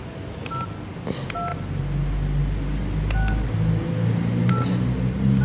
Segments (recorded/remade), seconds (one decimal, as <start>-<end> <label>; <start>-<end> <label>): 0.0-5.4 recorded